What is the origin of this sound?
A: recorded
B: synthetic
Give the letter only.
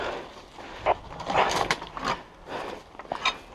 A